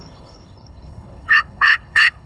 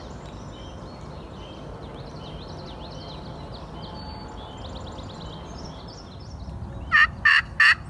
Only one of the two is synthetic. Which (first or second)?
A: first